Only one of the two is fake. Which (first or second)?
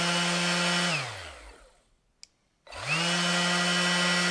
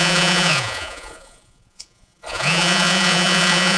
second